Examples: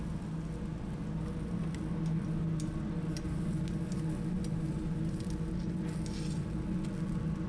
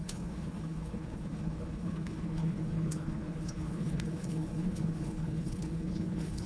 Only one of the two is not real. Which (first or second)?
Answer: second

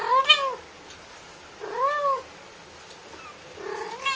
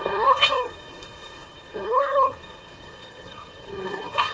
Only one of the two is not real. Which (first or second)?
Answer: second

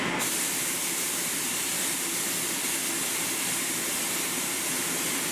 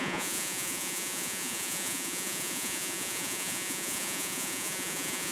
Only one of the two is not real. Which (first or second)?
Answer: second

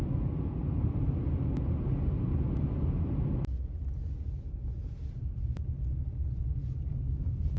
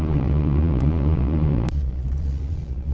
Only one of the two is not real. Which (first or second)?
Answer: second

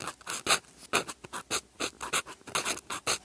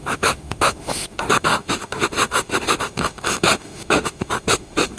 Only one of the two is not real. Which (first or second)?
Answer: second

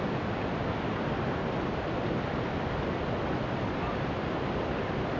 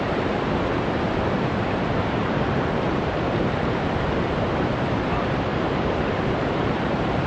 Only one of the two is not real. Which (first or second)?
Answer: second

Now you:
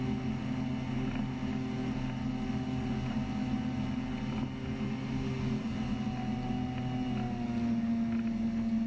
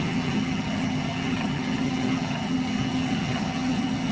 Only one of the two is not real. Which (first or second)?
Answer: second